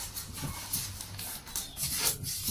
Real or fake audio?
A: real